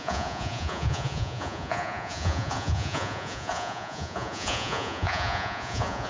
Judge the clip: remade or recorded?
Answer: remade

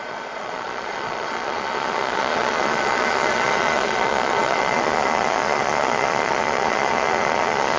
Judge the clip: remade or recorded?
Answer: remade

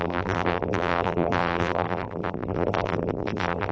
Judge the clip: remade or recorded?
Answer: remade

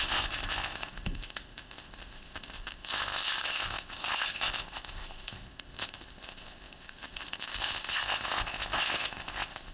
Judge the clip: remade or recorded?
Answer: remade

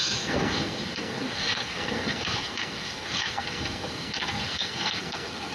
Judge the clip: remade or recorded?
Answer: remade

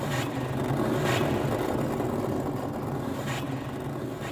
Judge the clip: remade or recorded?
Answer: recorded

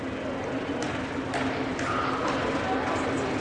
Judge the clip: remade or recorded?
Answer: recorded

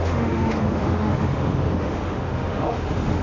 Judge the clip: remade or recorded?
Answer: remade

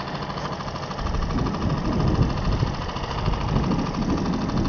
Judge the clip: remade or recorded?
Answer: recorded